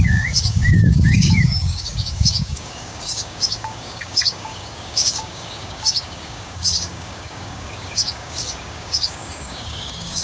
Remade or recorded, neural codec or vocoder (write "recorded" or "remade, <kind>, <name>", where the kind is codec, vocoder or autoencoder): remade, codec, DAC